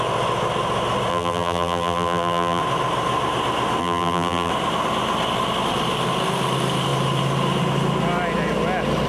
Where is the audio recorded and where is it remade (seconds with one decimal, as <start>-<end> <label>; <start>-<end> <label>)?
0.0-1.1 recorded; 1.1-2.6 remade; 2.6-3.8 recorded; 3.8-4.5 remade; 4.5-9.1 recorded